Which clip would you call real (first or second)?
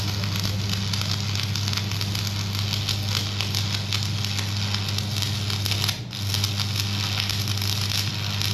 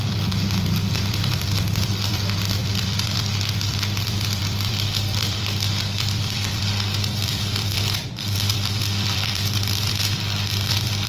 first